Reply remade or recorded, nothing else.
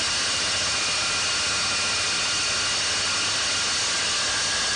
recorded